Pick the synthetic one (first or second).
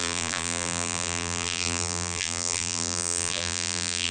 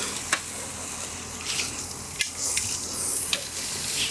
first